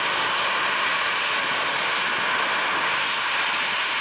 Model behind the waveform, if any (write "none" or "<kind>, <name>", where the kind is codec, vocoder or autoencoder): none